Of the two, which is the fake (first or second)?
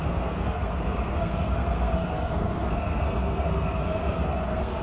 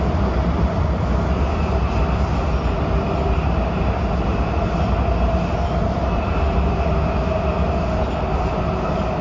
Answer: first